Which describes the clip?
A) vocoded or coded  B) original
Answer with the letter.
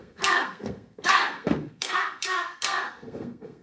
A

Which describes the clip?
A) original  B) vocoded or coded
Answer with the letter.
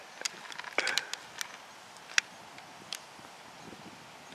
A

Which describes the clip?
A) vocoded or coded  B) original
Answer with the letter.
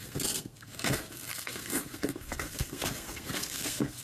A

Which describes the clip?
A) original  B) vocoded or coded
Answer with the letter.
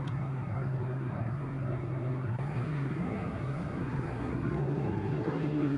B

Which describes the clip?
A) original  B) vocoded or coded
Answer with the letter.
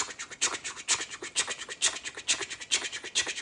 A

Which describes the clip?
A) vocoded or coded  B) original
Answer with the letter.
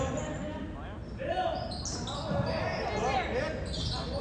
B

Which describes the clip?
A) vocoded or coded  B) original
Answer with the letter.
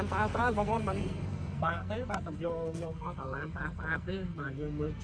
A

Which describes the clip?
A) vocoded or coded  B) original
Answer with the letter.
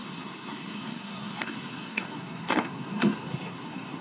A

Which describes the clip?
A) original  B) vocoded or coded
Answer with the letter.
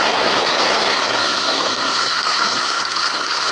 B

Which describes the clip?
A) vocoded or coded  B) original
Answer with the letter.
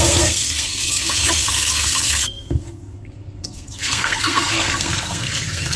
A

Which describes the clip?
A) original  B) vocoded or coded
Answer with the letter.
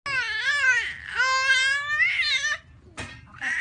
A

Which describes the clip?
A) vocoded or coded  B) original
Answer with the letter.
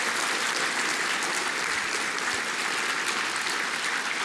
B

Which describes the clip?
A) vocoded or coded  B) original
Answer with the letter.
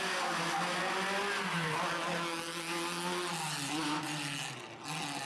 B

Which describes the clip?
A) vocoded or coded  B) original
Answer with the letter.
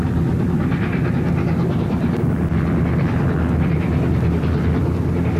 B